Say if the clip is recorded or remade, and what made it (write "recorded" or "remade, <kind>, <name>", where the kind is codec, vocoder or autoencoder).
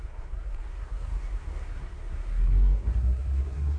remade, codec, SNAC